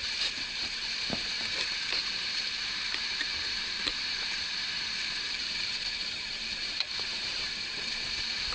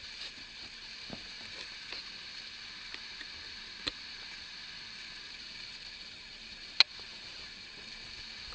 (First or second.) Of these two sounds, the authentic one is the second